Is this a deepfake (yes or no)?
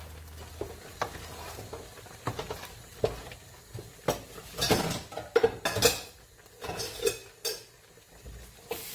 no